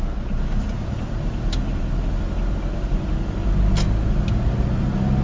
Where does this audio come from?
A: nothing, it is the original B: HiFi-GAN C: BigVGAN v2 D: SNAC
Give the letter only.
A